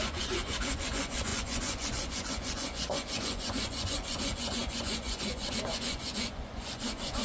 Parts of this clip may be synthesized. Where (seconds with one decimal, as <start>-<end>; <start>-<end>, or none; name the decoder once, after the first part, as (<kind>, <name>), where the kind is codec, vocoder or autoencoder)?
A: 0.0-7.2 (vocoder, Vocos)